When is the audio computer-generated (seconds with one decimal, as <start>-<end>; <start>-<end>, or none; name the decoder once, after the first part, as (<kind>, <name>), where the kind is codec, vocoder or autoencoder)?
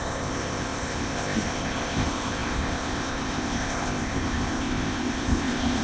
0.0-5.8 (codec, ZipCodec)